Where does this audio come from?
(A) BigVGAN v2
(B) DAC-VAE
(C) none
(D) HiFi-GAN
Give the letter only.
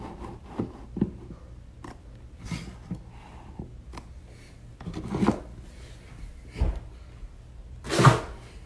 C